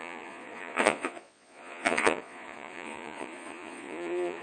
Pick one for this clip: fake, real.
fake